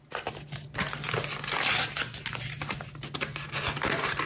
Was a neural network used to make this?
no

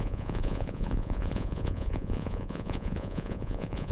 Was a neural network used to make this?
yes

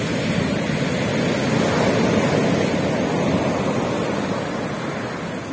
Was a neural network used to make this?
no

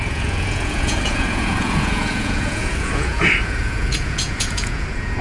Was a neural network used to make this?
yes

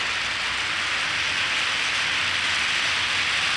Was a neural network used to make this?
no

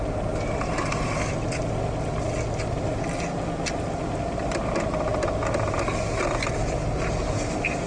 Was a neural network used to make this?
no